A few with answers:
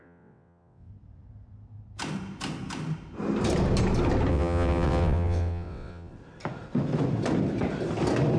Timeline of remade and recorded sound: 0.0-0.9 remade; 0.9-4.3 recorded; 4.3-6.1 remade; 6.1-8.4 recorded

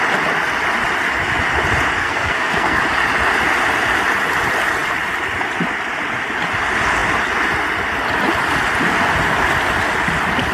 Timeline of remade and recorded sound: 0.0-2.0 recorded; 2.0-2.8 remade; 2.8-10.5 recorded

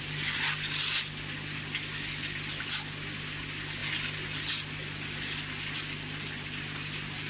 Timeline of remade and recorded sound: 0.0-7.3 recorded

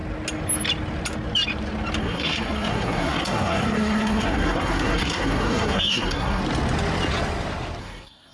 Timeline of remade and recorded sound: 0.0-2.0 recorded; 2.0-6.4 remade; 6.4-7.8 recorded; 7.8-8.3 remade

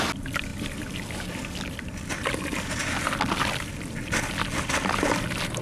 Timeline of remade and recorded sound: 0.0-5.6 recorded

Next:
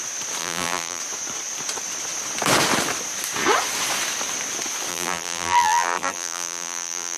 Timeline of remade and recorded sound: 0.0-0.4 recorded; 0.4-1.0 remade; 1.0-4.9 recorded; 4.9-7.2 remade

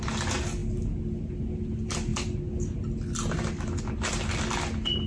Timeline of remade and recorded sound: 0.0-5.1 recorded

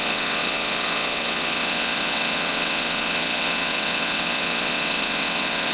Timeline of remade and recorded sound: 0.0-5.7 remade